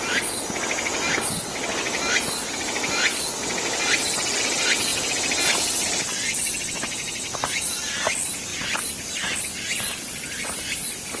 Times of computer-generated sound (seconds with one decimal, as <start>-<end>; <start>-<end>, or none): none

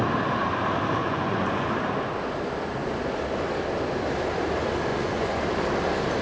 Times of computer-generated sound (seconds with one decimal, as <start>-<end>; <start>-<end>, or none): 1.0-1.7; 4.9-5.4

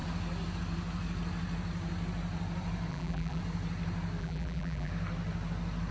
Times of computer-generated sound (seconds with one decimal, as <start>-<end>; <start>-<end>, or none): 2.9-3.4; 4.2-4.9

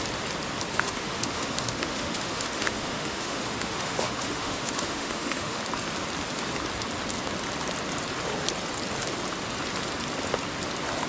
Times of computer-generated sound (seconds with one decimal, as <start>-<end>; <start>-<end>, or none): 0.7-5.6